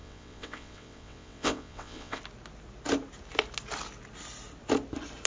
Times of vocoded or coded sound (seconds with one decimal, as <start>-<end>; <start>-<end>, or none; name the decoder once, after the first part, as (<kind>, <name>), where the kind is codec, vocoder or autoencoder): 0.0-2.2 (vocoder, WaveNeXt)